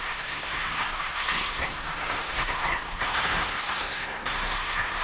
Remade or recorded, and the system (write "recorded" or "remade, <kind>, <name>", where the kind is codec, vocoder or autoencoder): remade, codec, SNAC